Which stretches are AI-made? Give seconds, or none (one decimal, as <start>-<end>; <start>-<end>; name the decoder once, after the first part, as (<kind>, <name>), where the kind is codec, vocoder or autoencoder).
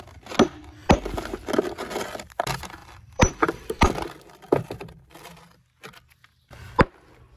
2.8-5.4 (vocoder, BigVGAN v2)